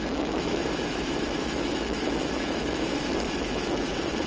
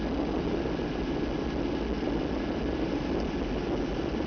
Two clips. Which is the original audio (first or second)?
second